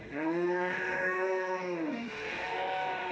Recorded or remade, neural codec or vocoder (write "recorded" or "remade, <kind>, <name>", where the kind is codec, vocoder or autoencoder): remade, autoencoder, DAC-VAE